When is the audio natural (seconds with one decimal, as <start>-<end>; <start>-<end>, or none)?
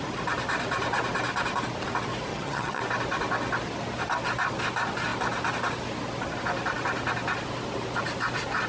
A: 0.0-2.3; 2.8-8.7